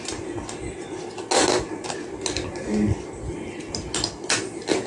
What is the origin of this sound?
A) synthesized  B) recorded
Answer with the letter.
B